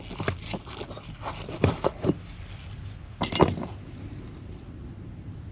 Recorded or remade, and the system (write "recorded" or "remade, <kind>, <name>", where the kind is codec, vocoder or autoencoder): recorded